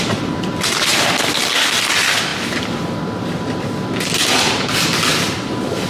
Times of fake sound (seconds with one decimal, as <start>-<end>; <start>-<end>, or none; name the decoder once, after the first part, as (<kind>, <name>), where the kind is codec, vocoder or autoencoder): 0.0-5.9 (vocoder, BigVGAN v2)